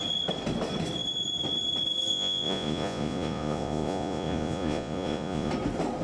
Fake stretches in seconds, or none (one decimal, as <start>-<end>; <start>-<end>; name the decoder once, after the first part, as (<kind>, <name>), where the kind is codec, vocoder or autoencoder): 2.1-5.5 (vocoder, Vocos)